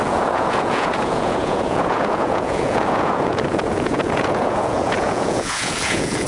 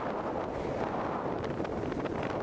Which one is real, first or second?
second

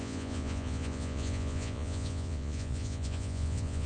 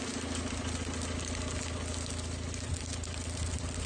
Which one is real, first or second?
second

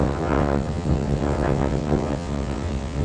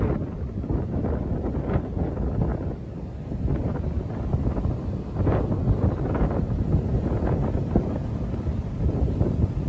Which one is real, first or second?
second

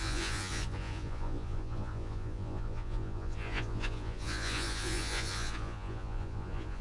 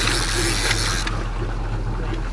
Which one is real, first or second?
second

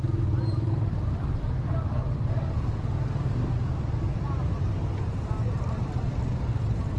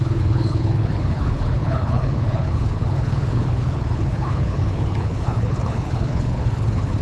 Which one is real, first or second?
first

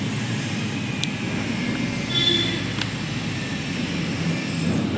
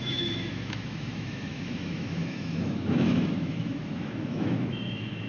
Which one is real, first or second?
first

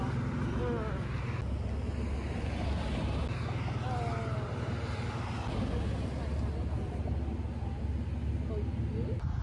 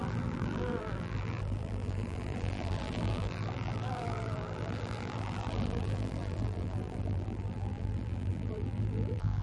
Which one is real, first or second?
first